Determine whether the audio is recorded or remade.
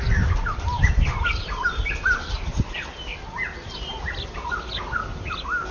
recorded